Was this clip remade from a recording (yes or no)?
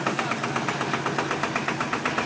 no